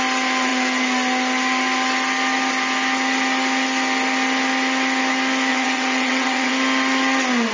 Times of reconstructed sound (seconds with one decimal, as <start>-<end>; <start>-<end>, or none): 5.5-6.5